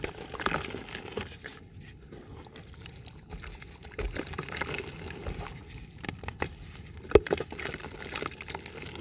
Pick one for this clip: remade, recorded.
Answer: recorded